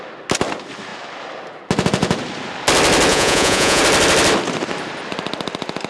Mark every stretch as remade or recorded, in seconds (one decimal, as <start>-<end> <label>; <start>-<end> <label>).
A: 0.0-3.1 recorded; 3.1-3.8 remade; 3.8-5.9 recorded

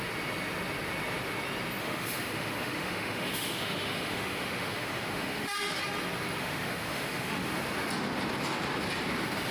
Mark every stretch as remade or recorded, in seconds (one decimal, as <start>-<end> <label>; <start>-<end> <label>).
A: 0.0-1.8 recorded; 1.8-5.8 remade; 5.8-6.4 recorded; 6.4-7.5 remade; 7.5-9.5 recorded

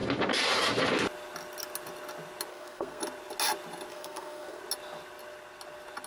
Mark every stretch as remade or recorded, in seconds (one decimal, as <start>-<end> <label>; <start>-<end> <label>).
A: 0.0-2.5 recorded; 2.5-3.0 remade; 3.0-3.9 recorded; 3.9-4.6 remade; 4.6-6.1 recorded

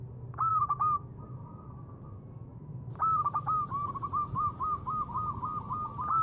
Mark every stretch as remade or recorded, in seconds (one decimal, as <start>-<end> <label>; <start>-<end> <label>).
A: 0.0-0.5 recorded; 0.5-1.0 remade; 1.0-2.5 recorded; 2.5-3.3 remade; 3.3-6.2 recorded

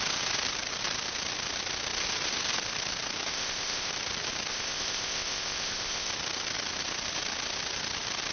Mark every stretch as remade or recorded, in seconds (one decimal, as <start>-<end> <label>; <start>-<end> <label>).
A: 0.0-3.3 recorded; 3.3-3.9 remade; 3.9-4.5 recorded; 4.5-6.1 remade; 6.1-8.3 recorded

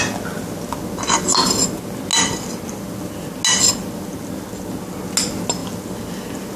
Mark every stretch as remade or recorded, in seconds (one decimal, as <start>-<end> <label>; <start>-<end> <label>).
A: 0.0-6.6 recorded

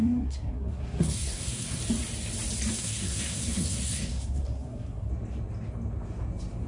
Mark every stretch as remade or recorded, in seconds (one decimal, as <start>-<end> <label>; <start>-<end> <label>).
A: 0.0-1.8 remade; 1.8-2.7 recorded; 2.7-5.1 remade; 5.1-6.7 recorded